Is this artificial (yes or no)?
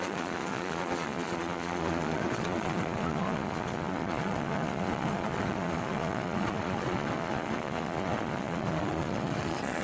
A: yes